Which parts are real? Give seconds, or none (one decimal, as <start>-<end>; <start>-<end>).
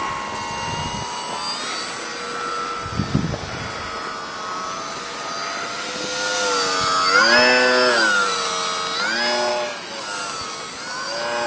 0.0-9.5; 10.0-11.5